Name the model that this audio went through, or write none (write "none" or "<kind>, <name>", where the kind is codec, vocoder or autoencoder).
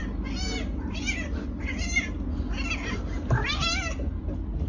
none